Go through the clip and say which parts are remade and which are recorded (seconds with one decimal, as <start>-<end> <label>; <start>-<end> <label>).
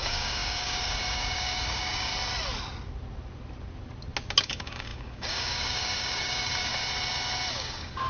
0.0-2.1 remade; 2.1-4.4 recorded; 4.4-6.7 remade; 6.7-7.5 recorded; 7.5-8.1 remade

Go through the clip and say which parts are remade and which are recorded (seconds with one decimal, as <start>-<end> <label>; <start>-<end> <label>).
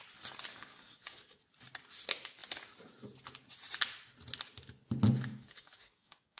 0.0-0.5 recorded; 0.5-1.4 remade; 1.4-5.3 recorded; 5.3-6.4 remade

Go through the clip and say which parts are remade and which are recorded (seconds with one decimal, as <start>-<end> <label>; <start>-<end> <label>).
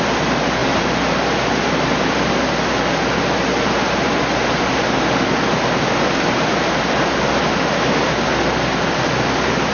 0.0-9.7 recorded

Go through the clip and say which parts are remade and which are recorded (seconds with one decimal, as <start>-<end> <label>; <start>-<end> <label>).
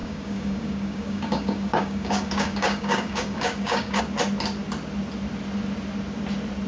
0.0-4.0 remade; 4.0-6.7 recorded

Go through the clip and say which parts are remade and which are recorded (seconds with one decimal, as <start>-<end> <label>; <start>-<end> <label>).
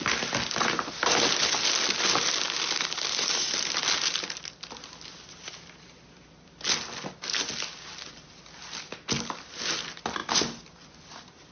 0.0-11.5 recorded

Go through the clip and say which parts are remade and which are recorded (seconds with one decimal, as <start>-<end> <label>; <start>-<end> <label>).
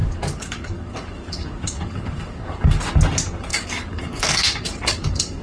0.0-2.8 remade; 2.8-3.5 recorded; 3.5-5.4 remade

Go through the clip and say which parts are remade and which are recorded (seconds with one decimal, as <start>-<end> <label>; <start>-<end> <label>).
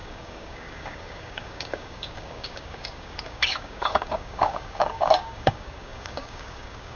0.0-7.0 remade